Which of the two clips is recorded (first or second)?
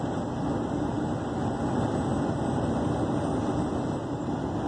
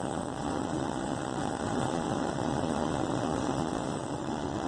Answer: first